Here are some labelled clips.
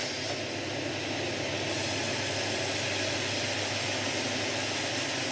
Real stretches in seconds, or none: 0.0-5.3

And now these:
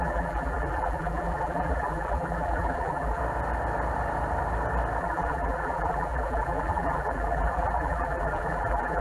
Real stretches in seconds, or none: 3.2-5.0

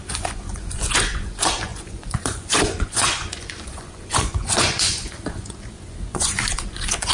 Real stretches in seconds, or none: none

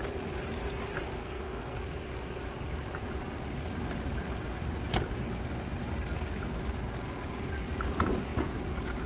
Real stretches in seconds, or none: 0.0-1.2; 1.8-9.1

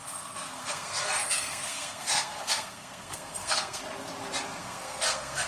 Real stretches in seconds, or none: 3.8-4.6

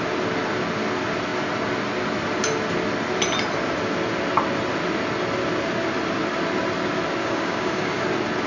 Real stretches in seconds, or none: 0.0-7.2; 8.0-8.5

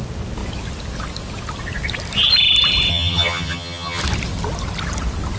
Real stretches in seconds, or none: 0.0-2.9; 4.0-5.4

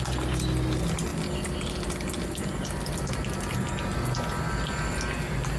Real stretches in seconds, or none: 0.0-5.6